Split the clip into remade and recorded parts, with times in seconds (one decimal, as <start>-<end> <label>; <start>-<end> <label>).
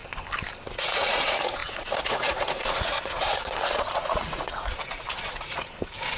0.0-0.7 recorded; 0.7-6.2 remade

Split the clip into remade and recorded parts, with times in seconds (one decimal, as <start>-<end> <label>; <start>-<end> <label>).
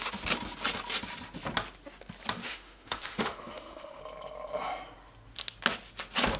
0.0-2.4 recorded; 2.4-4.0 remade; 4.0-6.4 recorded